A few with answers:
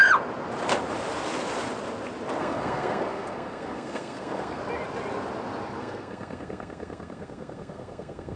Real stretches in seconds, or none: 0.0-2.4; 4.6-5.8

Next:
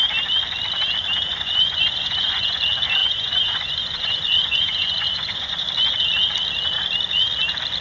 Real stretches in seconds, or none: 0.0-1.3; 2.6-3.0; 5.7-7.8

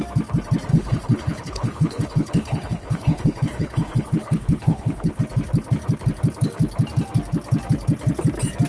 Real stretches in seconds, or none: 0.0-0.7; 5.2-8.7

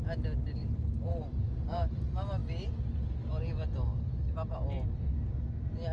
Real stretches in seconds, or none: 0.0-0.6; 2.0-5.9

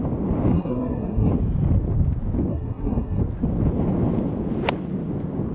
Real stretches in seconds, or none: 0.0-0.5; 1.3-2.5; 3.2-5.5